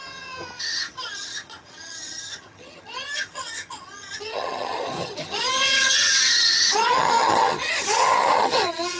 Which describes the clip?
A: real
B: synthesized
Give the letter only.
B